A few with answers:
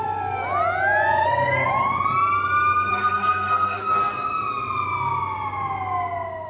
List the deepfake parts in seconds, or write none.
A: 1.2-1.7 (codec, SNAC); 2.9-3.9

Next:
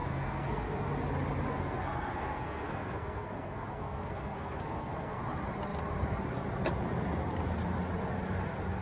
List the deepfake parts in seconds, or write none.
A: 0.0-0.9 (codec, SNAC); 1.5-5.2

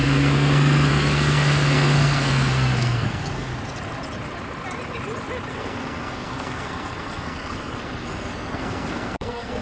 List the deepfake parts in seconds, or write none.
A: 0.0-3.5 (codec, SNAC); 5.5-9.6

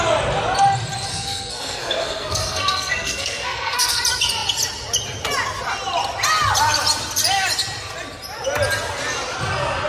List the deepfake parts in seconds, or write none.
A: 1.1-4.0 (codec, SNAC)

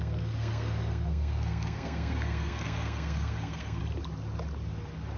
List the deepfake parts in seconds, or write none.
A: 0.0-3.8 (codec, SNAC)